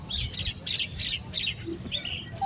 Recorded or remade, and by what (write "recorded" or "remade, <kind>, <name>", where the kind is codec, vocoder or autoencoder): recorded